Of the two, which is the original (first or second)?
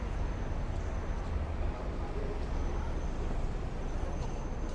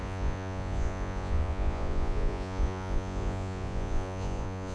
first